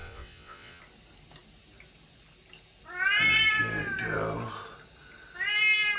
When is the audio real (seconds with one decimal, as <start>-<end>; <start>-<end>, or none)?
0.8-6.0